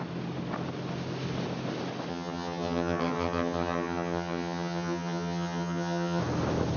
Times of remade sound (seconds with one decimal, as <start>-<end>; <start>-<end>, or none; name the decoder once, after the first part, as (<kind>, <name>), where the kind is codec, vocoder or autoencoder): 2.1-6.2 (vocoder, HiFi-GAN)